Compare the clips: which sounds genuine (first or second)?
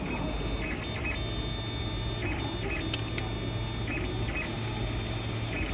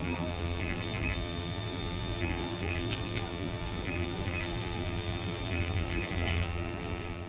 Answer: first